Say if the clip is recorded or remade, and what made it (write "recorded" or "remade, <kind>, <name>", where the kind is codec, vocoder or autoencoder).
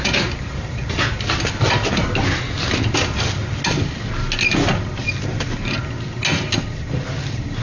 recorded